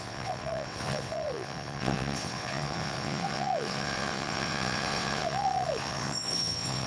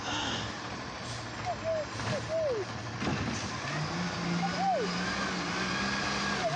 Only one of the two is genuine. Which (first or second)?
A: second